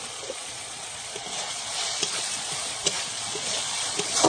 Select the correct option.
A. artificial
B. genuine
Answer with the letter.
A